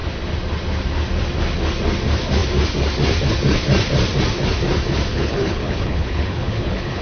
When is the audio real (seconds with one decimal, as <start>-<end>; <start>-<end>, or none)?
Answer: 0.0-5.1